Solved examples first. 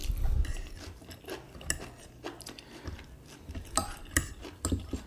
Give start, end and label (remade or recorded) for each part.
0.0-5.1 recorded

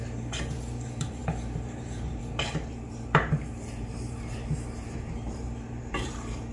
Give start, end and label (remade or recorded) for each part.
0.0-6.5 remade